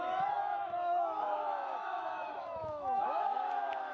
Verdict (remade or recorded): remade